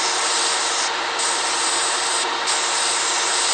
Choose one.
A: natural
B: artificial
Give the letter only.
A